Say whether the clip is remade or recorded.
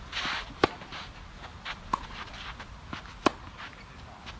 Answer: recorded